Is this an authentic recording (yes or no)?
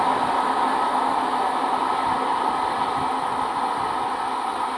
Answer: yes